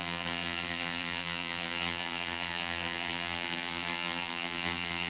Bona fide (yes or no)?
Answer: no